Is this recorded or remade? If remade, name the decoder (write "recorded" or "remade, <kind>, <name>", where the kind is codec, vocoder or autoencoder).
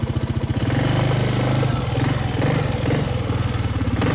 recorded